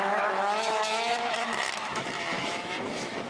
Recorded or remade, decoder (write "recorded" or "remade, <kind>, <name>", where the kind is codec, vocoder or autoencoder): remade, autoencoder, DAC-VAE